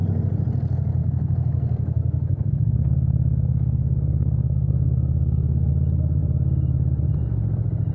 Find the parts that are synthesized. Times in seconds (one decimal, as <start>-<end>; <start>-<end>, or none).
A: 1.0-5.7